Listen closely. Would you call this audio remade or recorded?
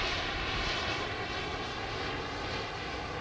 recorded